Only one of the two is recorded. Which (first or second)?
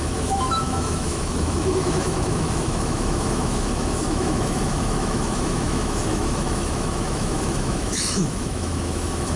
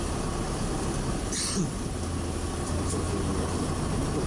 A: second